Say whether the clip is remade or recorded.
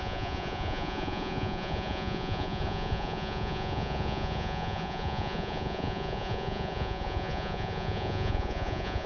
remade